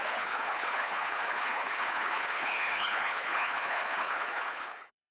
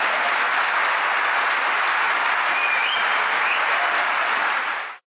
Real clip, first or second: second